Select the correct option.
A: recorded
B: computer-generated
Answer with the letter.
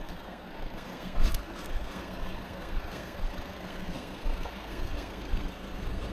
B